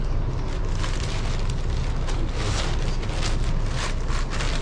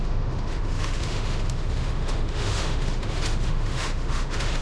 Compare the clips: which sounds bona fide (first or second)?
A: first